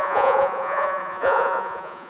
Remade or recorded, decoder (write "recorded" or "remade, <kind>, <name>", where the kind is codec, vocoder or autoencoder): remade, vocoder, Vocos